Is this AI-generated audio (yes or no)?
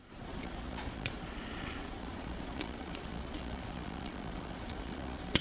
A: yes